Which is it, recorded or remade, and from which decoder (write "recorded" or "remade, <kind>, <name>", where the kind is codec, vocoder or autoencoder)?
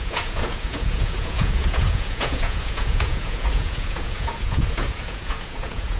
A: remade, vocoder, Vocos